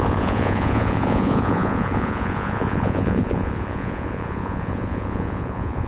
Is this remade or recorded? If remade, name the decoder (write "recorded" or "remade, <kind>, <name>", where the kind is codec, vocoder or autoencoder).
remade, vocoder, Vocos